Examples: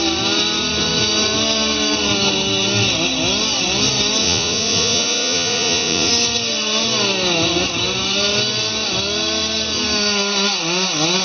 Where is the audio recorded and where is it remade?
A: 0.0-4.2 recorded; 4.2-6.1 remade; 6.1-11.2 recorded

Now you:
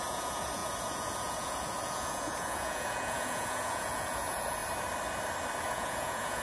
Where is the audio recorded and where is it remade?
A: 0.0-4.6 remade; 4.6-5.6 recorded; 5.6-6.4 remade

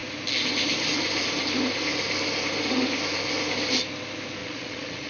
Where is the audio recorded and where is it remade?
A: 0.0-4.4 recorded; 4.4-5.1 remade

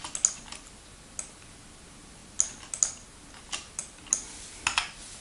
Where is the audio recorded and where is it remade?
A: 0.0-5.2 recorded

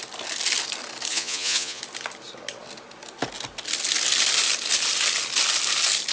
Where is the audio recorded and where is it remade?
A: 0.0-1.1 recorded; 1.1-1.8 remade; 1.8-6.1 recorded

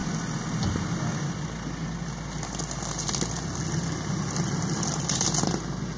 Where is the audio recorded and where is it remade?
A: 0.0-6.0 recorded

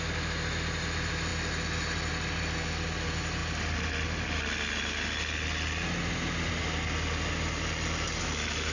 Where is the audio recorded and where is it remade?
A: 0.0-8.7 recorded